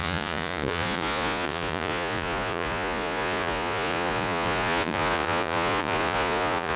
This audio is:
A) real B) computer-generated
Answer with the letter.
B